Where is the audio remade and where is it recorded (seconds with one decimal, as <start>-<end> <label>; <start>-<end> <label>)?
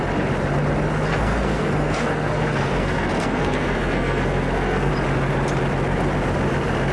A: 0.0-1.1 recorded; 1.1-4.9 remade; 4.9-6.9 recorded